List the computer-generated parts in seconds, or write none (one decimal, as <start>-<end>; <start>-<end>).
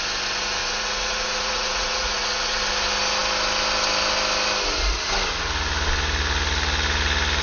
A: 0.6-2.6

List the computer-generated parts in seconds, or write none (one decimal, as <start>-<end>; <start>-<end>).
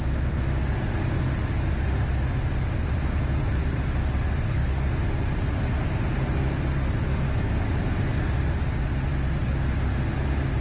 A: none